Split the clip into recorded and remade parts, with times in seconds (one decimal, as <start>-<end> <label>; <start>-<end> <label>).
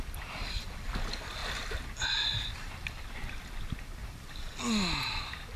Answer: 0.0-5.6 recorded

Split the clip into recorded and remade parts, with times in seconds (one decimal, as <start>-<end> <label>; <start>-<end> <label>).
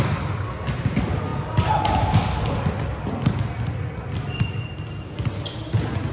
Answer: 0.0-6.1 recorded